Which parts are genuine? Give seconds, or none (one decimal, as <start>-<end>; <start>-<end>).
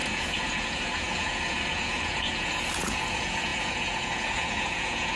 none